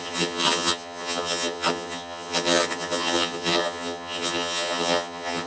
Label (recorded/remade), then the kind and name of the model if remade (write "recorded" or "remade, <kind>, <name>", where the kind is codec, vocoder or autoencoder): remade, vocoder, HiFi-GAN